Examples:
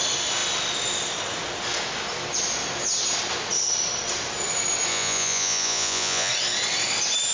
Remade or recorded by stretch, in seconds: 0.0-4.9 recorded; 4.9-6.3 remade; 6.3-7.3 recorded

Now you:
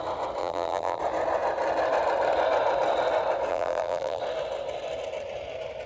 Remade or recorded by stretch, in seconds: 0.0-0.4 recorded; 0.4-1.0 remade; 1.0-3.5 recorded; 3.5-4.2 remade; 4.2-5.9 recorded

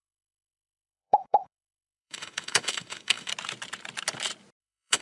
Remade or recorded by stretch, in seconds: 0.0-3.3 remade; 3.3-4.6 recorded; 4.6-5.0 remade

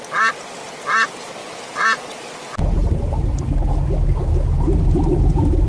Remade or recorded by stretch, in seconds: 0.0-5.7 recorded

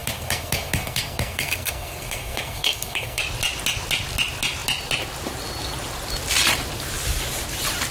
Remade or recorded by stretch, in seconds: 0.0-3.2 remade; 3.2-7.9 recorded

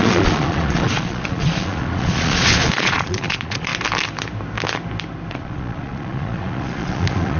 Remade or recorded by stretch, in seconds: 0.0-3.7 remade; 3.7-5.3 recorded; 5.3-7.4 remade

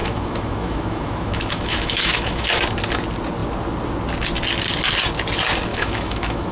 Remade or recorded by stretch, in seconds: 0.0-2.6 remade; 2.6-5.7 recorded; 5.7-6.5 remade

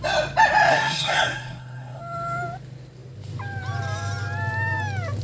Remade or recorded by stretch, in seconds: 0.0-0.7 recorded; 0.7-2.0 remade; 2.0-5.2 recorded